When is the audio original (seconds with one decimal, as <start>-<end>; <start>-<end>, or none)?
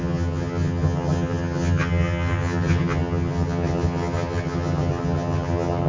none